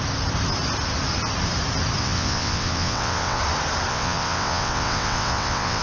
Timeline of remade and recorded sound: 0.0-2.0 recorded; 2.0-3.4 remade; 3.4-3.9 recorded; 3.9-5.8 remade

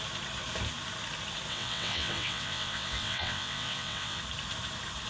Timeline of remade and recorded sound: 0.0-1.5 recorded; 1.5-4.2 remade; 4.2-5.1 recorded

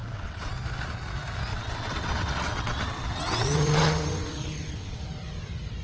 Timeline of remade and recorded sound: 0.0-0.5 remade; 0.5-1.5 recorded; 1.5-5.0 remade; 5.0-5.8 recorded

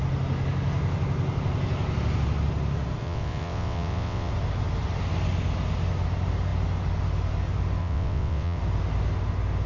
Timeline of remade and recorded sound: 0.0-3.0 recorded; 3.0-4.3 remade; 4.3-7.8 recorded; 7.8-8.6 remade; 8.6-9.7 recorded

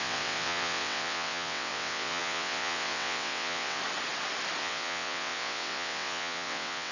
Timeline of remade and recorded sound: 0.0-3.8 remade; 3.8-4.6 recorded; 4.6-6.9 remade

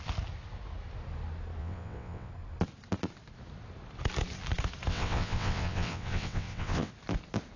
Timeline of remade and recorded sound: 0.0-1.6 recorded; 1.6-2.3 remade; 2.3-4.9 recorded; 4.9-6.9 remade; 6.9-7.6 recorded